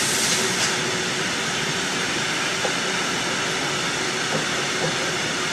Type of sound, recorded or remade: recorded